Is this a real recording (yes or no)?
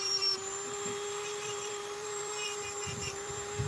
no